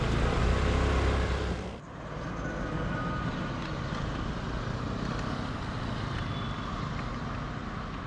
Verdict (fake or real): real